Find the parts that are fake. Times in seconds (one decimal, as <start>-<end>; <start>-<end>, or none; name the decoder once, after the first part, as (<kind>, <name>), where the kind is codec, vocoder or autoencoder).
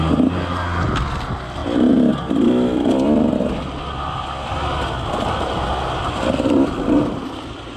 none